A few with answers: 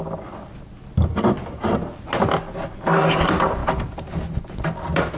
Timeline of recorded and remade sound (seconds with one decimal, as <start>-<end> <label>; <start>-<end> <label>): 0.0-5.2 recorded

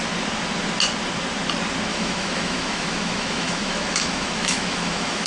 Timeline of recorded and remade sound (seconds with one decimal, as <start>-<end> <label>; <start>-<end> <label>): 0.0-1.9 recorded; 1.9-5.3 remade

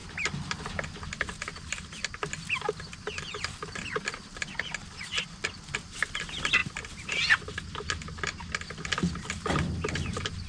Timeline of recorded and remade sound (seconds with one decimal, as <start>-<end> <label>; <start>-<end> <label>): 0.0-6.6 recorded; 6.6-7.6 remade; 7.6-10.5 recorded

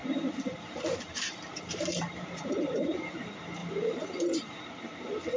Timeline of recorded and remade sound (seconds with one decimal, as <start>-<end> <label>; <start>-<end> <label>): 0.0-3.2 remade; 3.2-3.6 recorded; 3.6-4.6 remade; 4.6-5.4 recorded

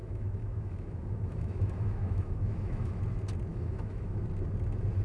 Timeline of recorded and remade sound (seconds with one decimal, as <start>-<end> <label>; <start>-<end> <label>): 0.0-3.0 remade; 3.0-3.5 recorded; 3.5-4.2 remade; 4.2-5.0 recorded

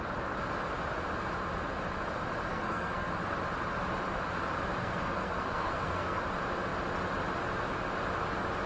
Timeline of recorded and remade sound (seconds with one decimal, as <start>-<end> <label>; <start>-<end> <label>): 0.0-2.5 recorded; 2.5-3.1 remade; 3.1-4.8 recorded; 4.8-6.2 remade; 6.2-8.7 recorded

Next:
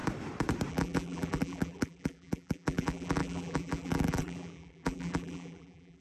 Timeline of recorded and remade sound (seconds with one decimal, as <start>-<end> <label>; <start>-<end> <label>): 0.0-0.7 recorded; 0.7-6.0 remade

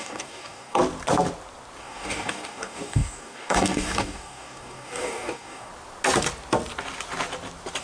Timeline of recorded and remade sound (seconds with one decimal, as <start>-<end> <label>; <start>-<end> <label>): 0.0-0.8 remade; 0.8-1.8 recorded; 1.8-5.7 remade; 5.7-7.8 recorded